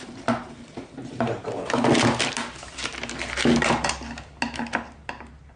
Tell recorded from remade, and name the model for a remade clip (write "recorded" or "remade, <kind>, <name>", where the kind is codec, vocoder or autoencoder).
recorded